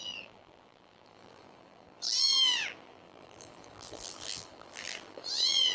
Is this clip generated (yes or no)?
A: yes